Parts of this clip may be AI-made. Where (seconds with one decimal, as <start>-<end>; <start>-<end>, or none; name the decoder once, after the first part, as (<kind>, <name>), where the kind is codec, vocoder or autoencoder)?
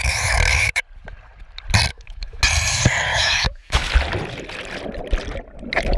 0.0-0.8 (autoencoder, DAC-VAE); 1.9-2.4; 3.1-3.9